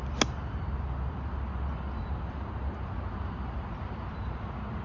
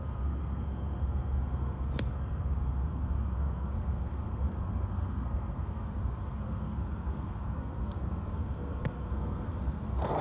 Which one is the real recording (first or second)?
first